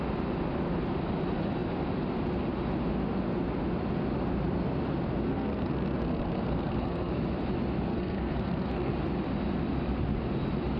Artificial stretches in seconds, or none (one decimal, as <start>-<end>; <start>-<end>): 5.3-7.1; 7.9-8.9